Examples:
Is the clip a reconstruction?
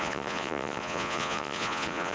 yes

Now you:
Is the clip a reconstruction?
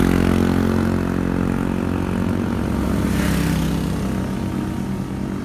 no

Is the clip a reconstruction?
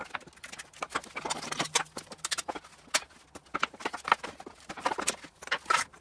no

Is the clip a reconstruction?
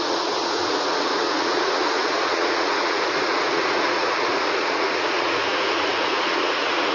yes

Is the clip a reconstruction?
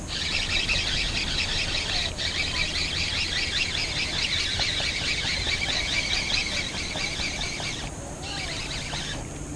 no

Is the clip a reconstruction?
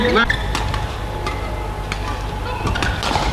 no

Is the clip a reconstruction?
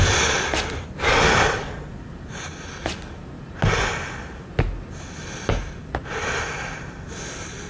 no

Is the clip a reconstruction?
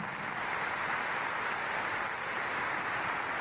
no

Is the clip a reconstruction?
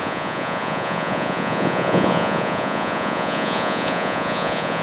yes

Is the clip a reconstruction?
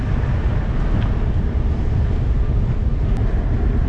no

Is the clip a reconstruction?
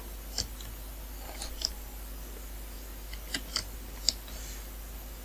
no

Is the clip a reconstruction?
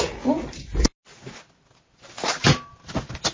no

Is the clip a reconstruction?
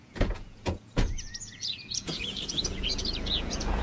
yes